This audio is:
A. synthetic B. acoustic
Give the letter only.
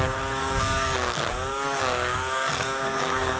A